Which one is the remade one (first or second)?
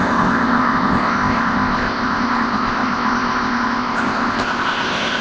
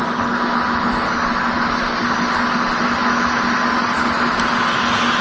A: first